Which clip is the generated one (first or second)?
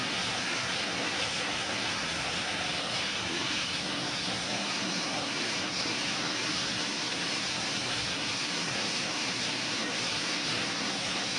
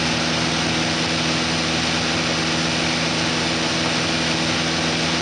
first